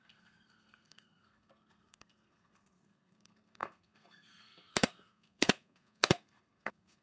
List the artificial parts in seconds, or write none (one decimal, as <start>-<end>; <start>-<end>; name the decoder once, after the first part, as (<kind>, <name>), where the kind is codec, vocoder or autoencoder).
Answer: 0.0-7.0 (codec, SNAC)